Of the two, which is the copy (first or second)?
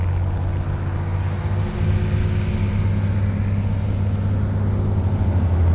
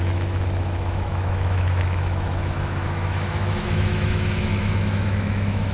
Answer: second